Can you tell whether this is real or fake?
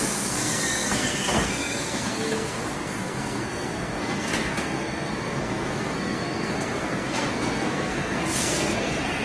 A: fake